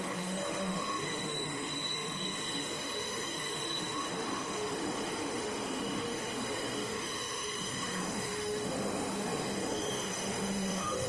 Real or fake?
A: fake